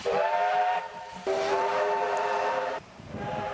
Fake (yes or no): yes